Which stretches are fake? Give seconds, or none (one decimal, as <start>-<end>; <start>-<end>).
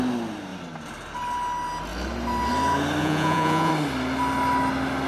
3.0-3.7